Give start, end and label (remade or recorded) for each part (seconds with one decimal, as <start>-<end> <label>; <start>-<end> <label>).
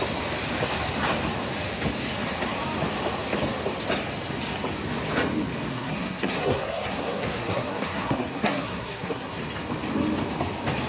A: 0.0-5.7 recorded; 5.7-9.4 remade; 9.4-10.9 recorded